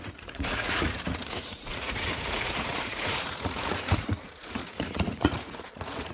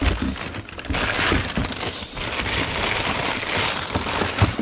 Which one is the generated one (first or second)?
first